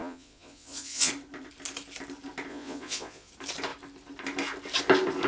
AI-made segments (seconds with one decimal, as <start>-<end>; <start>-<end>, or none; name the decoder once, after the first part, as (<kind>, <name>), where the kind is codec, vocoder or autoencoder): 0.0-1.1 (vocoder, Vocos); 2.5-3.3